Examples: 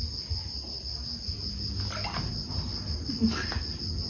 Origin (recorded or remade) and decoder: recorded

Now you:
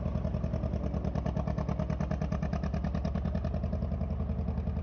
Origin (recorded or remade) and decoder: recorded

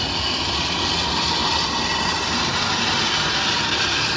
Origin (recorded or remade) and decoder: recorded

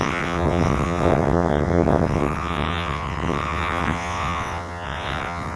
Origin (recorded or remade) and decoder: remade, vocoder, WaveNeXt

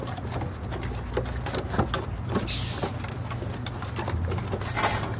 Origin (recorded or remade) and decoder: recorded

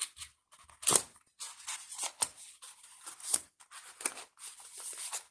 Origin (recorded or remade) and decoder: recorded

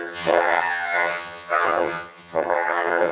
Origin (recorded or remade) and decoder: remade, vocoder, HiFi-GAN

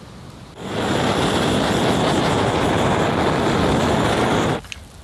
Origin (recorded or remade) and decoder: recorded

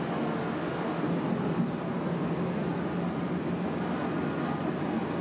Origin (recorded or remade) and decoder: recorded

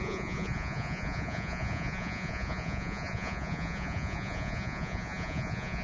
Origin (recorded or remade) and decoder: remade, vocoder, Vocos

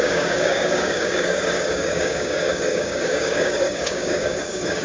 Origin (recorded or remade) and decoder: remade, codec, DAC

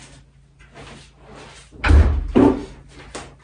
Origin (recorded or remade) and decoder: recorded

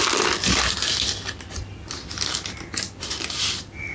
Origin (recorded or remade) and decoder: recorded